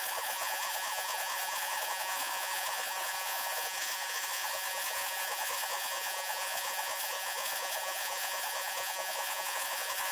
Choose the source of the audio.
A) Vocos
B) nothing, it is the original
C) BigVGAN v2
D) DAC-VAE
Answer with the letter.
A